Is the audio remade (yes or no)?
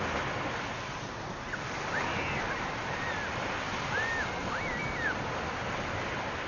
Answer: no